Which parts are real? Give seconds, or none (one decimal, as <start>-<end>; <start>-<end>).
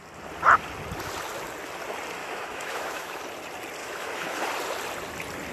0.0-2.2; 3.2-3.8; 4.4-5.5